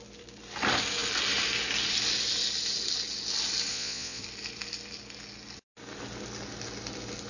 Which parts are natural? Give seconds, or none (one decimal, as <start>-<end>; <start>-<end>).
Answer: 0.0-3.7; 4.2-7.3